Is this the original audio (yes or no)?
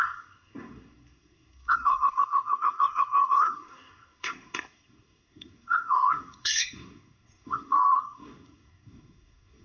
no